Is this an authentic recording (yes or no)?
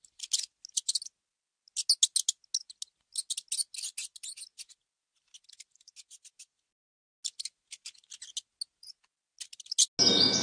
yes